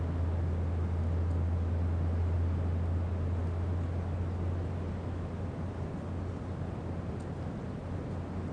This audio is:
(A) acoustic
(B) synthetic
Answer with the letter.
A